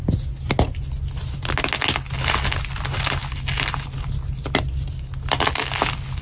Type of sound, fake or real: real